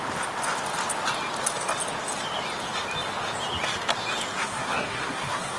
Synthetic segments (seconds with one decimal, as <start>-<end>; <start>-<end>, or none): 4.4-5.6